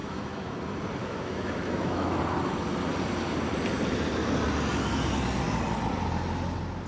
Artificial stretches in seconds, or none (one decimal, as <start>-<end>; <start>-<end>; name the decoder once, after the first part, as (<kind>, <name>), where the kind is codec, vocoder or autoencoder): 0.0-0.6 (autoencoder, DAC-VAE); 1.0-2.2